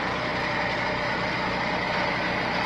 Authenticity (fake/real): real